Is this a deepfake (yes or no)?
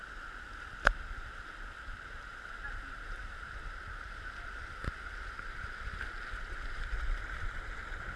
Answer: no